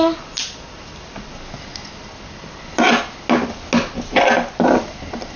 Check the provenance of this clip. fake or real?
real